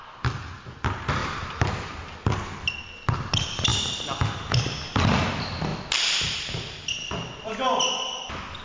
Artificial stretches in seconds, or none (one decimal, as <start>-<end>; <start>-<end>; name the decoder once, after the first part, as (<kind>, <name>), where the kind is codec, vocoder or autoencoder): 1.2-2.7 (vocoder, BigVGAN v2); 3.7-4.6